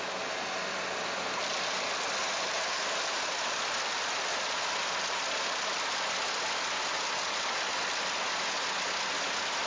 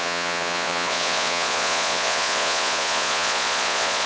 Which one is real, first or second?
first